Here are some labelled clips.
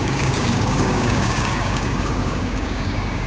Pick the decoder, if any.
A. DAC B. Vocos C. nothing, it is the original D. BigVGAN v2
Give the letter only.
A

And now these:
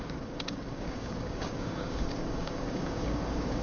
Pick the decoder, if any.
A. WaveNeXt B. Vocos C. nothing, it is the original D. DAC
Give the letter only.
D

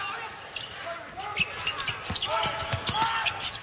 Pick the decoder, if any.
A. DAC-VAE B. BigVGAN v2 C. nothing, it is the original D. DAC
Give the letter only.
C